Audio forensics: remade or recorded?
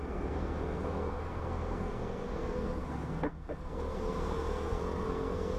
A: remade